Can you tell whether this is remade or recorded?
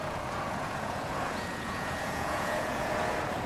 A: remade